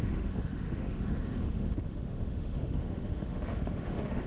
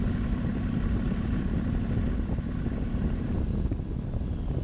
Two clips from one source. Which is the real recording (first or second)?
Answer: second